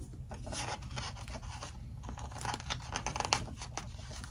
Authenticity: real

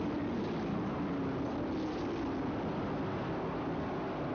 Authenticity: real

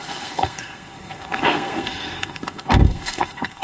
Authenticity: fake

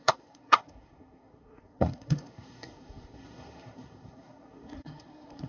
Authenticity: fake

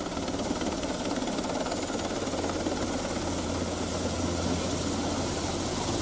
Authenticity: real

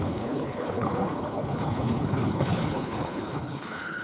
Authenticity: fake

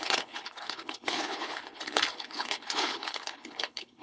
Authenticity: fake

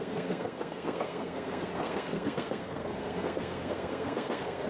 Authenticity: fake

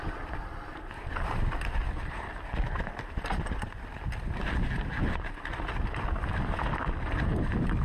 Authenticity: real